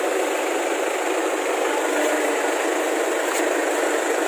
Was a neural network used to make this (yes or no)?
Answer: no